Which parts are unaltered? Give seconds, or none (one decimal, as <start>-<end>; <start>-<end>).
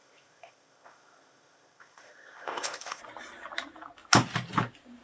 3.0-5.0